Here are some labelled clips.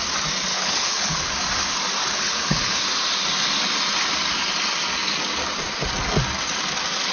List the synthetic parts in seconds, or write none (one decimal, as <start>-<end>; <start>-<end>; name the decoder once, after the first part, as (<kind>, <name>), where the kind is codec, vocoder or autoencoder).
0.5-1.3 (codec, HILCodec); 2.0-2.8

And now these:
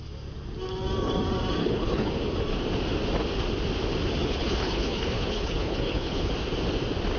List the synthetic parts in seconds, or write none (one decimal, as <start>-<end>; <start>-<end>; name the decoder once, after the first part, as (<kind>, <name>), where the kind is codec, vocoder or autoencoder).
1.6-2.1 (codec, HILCodec); 4.2-6.3

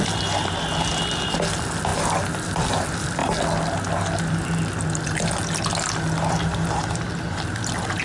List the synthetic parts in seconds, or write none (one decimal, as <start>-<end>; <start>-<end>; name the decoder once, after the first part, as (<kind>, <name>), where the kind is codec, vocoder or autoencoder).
none